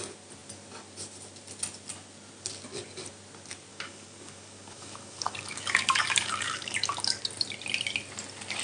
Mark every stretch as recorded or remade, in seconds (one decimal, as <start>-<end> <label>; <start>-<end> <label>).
0.0-3.7 recorded; 3.7-7.2 remade; 7.2-8.6 recorded